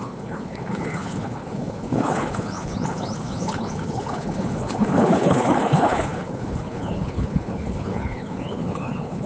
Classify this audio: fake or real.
fake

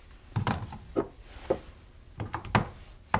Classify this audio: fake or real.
real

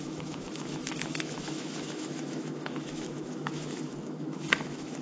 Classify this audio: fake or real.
fake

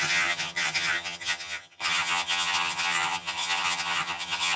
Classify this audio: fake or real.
fake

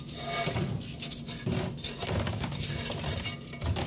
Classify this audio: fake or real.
real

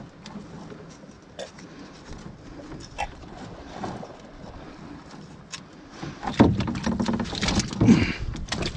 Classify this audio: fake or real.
real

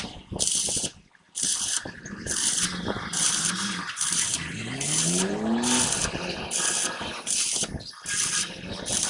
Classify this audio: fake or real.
real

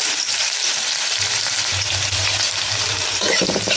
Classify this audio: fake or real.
fake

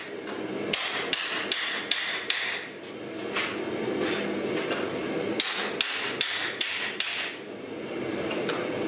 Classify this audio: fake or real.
real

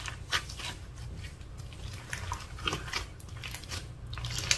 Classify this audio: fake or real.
real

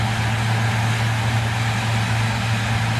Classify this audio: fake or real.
real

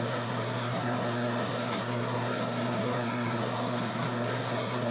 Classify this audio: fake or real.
fake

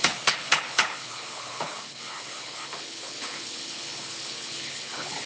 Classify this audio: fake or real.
fake